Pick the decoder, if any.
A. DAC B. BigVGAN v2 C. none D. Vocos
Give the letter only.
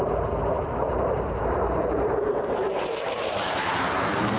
B